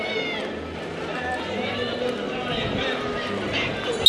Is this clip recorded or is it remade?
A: recorded